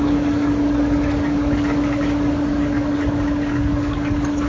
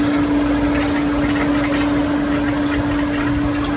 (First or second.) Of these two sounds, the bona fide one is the second